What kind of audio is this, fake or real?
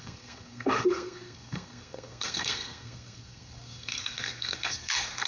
fake